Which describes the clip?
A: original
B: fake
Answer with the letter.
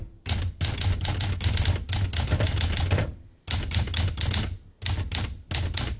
A